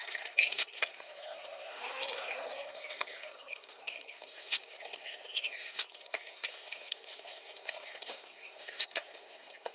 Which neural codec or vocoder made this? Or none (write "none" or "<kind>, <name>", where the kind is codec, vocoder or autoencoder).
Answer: codec, SNAC